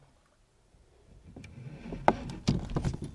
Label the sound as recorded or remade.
recorded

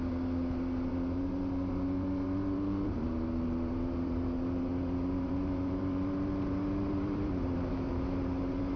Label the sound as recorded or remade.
remade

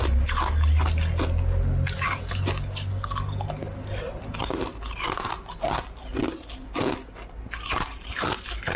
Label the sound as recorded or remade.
recorded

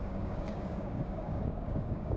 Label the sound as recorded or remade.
remade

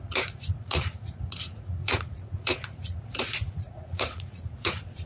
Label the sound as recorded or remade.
remade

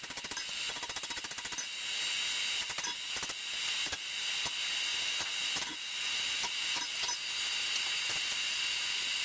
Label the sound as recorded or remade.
recorded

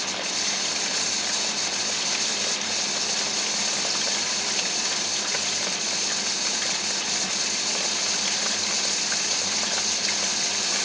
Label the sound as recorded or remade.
recorded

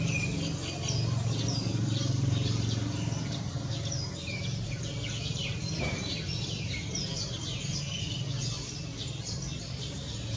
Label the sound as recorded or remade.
recorded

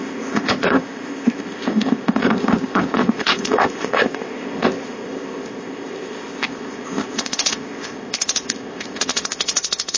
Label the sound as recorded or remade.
remade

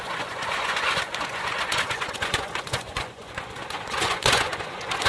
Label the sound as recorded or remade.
remade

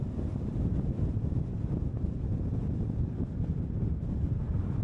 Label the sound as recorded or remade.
recorded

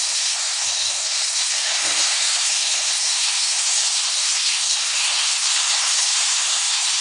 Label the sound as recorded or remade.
remade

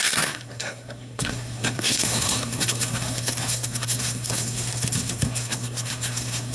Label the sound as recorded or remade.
remade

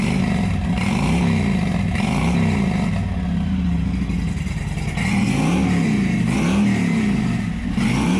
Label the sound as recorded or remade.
recorded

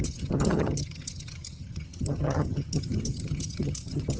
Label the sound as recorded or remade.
remade